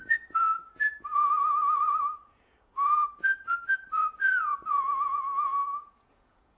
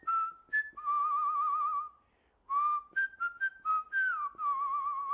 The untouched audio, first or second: second